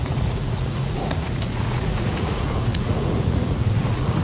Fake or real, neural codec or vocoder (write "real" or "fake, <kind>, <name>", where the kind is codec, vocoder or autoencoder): fake, vocoder, Vocos